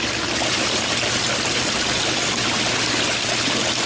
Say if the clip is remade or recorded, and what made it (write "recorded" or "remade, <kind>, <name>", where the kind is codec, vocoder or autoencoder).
recorded